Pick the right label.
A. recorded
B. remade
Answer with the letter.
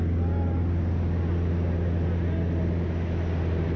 A